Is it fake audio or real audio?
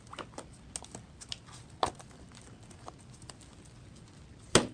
real